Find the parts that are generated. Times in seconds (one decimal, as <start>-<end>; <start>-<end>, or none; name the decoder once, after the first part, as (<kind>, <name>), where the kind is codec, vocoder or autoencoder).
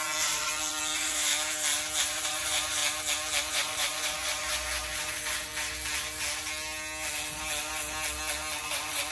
0.0-1.3 (vocoder, Vocos); 2.0-2.8; 3.5-5.5; 8.6-9.1